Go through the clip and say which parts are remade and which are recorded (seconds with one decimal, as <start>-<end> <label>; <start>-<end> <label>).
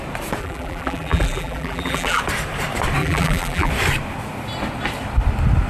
0.0-0.4 recorded; 0.4-2.2 remade; 2.2-3.0 recorded; 3.0-3.7 remade; 3.7-5.7 recorded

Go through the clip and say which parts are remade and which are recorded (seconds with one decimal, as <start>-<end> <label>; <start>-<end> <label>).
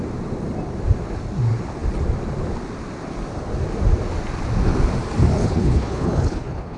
0.0-5.4 recorded; 5.4-6.8 remade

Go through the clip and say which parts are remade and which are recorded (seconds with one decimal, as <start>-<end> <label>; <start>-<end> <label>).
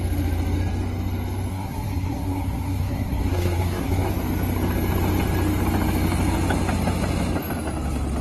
0.0-1.5 recorded; 1.5-4.1 remade; 4.1-8.2 recorded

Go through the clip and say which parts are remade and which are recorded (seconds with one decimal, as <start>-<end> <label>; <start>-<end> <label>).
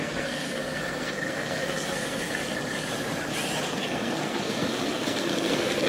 0.0-2.4 remade; 2.4-3.6 recorded; 3.6-5.9 remade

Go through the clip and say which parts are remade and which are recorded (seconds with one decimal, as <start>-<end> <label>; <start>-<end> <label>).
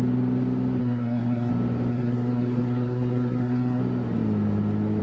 0.0-0.8 recorded; 0.8-1.5 remade; 1.5-1.9 recorded; 1.9-3.8 remade; 3.8-5.0 recorded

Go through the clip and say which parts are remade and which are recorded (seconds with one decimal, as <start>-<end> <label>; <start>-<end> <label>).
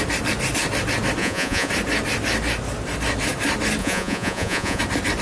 0.0-1.2 recorded; 1.2-1.7 remade; 1.7-3.8 recorded; 3.8-4.8 remade; 4.8-5.2 recorded